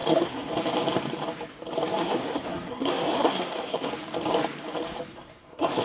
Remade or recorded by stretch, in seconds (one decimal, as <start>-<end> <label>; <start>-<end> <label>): 0.0-0.5 remade; 0.5-2.0 recorded; 2.0-3.9 remade; 3.9-5.1 recorded; 5.1-5.8 remade